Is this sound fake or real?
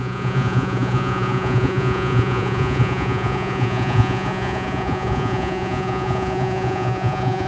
fake